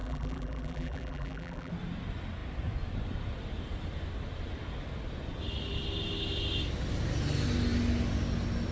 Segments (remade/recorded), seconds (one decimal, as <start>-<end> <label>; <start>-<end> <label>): 0.0-1.7 remade; 1.7-8.7 recorded